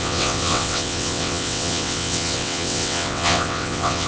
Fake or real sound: fake